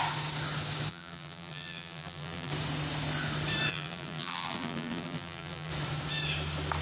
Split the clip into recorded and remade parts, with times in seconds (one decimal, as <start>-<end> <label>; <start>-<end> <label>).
0.0-0.9 recorded; 0.9-2.5 remade; 2.5-3.7 recorded; 3.7-5.7 remade; 5.7-6.8 recorded